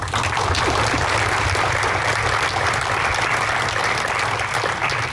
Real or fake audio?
real